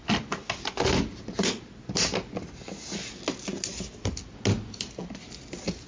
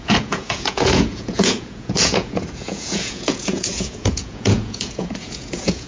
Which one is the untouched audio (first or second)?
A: first